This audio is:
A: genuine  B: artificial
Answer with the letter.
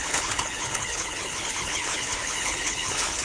B